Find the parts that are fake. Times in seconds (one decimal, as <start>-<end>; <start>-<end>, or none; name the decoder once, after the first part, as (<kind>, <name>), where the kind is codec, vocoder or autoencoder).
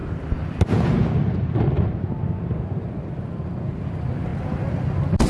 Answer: none